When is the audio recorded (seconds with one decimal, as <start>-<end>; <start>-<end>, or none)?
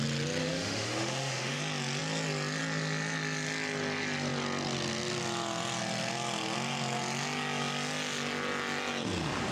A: 0.0-0.4; 1.6-9.5